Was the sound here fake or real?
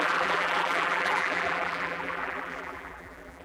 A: fake